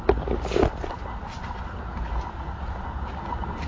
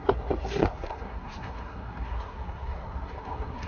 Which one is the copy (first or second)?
second